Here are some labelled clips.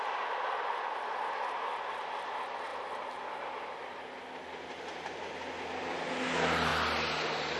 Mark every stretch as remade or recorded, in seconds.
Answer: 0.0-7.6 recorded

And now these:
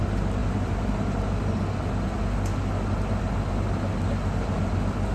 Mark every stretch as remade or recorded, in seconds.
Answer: 0.0-5.1 recorded